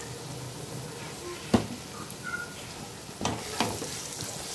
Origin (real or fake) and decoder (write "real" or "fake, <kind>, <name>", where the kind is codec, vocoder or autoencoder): real